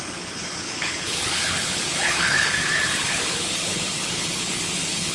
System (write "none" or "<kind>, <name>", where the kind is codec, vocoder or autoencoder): codec, HILCodec